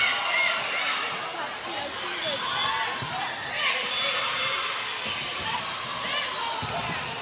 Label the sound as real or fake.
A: real